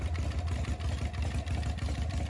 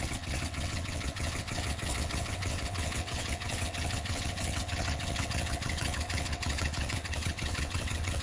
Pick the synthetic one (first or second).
second